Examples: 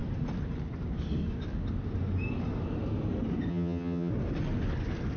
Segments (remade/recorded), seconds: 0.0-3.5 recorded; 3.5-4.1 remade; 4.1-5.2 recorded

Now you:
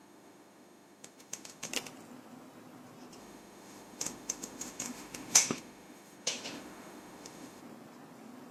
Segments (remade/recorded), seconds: 0.0-1.7 remade; 1.7-3.2 recorded; 3.2-7.6 remade; 7.6-8.5 recorded

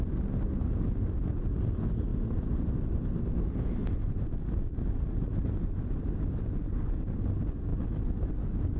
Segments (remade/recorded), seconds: 0.0-8.8 recorded

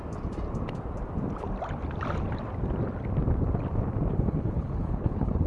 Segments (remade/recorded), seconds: 0.0-4.1 recorded; 4.1-5.5 remade

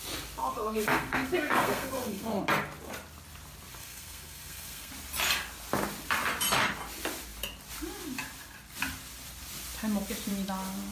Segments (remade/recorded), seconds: 0.0-0.4 recorded; 0.4-2.4 remade; 2.4-3.7 recorded; 3.7-4.9 remade; 4.9-10.9 recorded

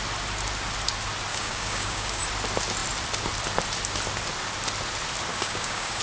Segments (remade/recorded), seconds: 0.0-1.3 recorded; 1.3-2.2 remade; 2.2-5.3 recorded; 5.3-6.0 remade

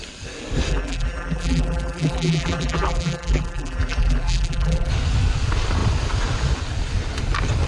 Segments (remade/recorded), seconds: 0.0-0.7 recorded; 0.7-4.9 remade; 4.9-7.7 recorded